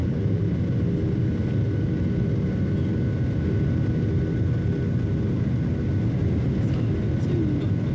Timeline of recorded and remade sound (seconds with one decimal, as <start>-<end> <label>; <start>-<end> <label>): 0.0-0.5 remade; 0.5-7.9 recorded